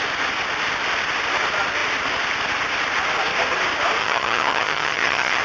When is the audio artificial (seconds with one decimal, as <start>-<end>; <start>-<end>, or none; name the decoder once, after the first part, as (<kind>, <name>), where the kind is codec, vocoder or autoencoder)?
4.0-5.4 (vocoder, HiFi-GAN)